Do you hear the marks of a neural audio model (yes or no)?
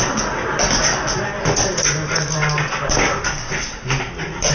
no